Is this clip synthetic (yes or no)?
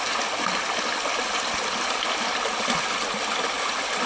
no